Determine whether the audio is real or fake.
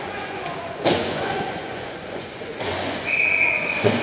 fake